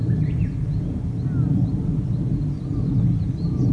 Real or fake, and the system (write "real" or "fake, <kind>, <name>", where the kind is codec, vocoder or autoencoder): real